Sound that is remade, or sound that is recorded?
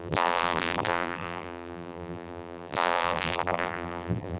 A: remade